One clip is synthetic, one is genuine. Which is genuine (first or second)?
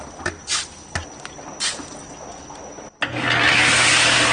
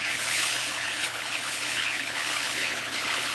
first